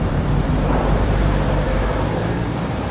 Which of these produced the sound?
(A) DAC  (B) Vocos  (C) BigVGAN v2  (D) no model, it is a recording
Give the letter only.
C